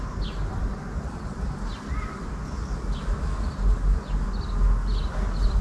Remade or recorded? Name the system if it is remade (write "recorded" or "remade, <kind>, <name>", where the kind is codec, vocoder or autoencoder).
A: recorded